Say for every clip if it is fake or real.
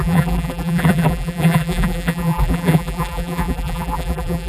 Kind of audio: fake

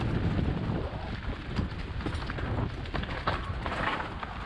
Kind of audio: real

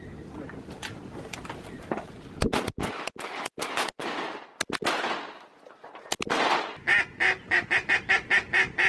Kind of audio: real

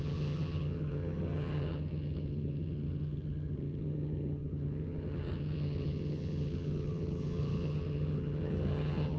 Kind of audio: fake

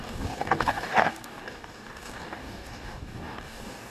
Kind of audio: fake